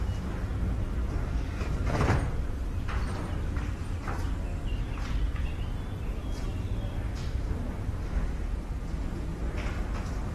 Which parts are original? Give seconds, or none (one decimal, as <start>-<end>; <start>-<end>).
0.0-1.0; 6.2-7.2; 8.0-10.3